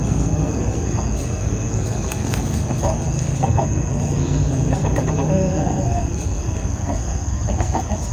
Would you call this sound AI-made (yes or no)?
yes